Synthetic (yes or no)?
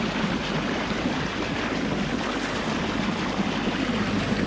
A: no